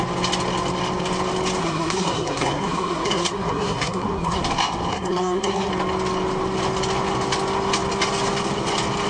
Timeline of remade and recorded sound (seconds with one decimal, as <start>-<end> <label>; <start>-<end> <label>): 0.0-1.6 recorded; 1.6-4.4 remade; 4.4-4.9 recorded; 4.9-5.7 remade; 5.7-9.1 recorded

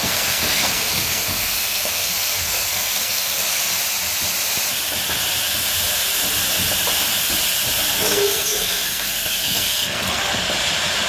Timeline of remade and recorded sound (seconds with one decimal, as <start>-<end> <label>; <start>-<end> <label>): 0.0-3.8 remade; 3.8-7.9 recorded; 7.9-10.4 remade; 10.4-11.1 recorded

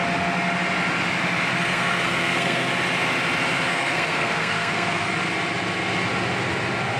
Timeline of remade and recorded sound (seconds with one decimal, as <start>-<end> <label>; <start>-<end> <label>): 0.0-1.5 recorded; 1.5-2.7 remade; 2.7-3.7 recorded; 3.7-5.1 remade; 5.1-7.0 recorded